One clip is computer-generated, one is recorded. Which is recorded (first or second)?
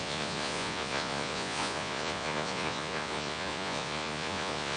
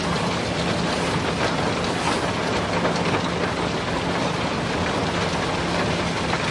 second